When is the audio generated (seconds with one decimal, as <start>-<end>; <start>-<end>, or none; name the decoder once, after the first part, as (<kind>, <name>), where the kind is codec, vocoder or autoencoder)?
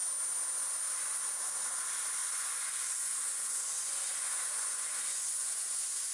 2.2-6.1 (vocoder, Vocos)